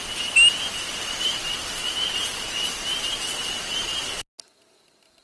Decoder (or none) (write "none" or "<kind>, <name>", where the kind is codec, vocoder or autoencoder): none